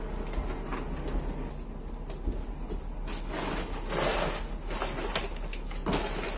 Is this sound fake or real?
real